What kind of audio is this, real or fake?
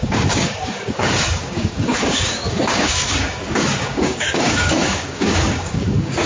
fake